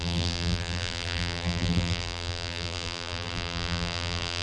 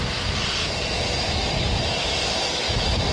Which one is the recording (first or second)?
second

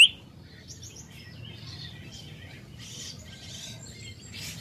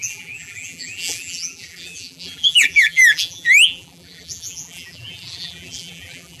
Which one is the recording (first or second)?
first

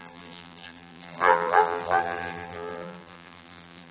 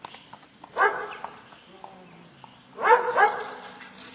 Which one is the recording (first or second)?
second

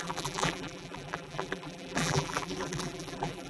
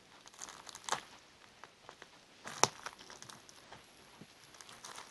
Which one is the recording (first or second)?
second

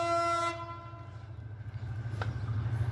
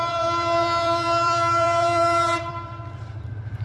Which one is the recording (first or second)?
first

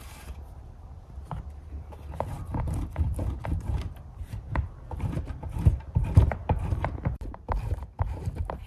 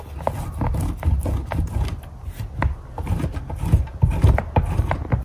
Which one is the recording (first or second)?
second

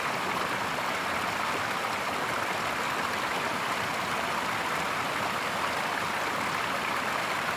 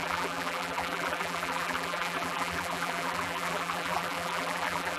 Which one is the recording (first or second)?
first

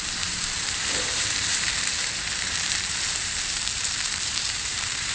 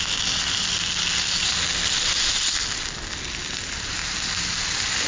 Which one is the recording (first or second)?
second